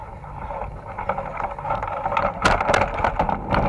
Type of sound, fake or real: real